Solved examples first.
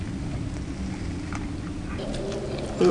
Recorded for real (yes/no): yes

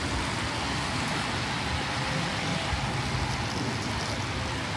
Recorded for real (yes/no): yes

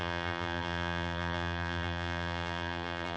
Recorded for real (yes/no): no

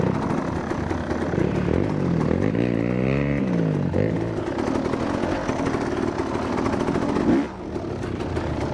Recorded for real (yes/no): yes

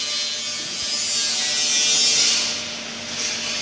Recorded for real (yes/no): yes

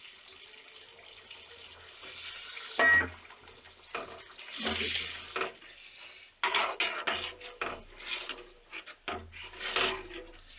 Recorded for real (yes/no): yes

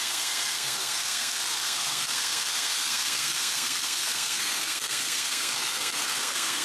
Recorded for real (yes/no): no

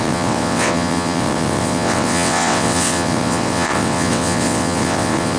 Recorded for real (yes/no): no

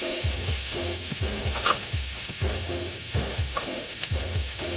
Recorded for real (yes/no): no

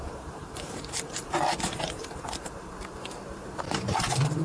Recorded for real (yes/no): no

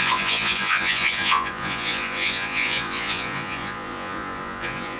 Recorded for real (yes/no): no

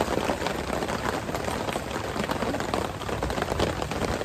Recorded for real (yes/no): yes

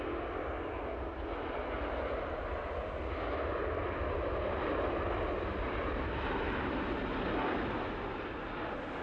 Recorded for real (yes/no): yes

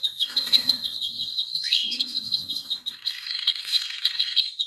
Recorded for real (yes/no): no